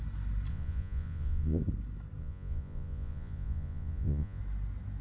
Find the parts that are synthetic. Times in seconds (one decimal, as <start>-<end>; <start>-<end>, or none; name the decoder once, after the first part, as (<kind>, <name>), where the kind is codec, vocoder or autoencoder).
0.5-1.6 (vocoder, Vocos); 2.2-4.4